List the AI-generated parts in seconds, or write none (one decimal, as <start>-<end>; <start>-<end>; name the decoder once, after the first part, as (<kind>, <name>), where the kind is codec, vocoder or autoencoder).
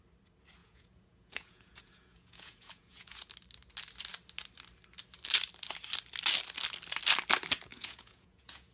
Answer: 0.6-3.3 (vocoder, Vocos); 7.7-8.7